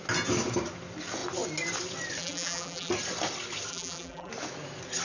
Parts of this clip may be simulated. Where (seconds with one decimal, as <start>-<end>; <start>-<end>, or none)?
2.2-2.9; 3.7-4.3